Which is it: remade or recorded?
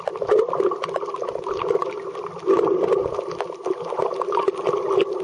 recorded